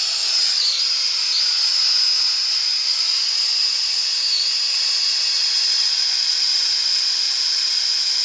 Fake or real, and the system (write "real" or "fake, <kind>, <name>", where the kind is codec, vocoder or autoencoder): real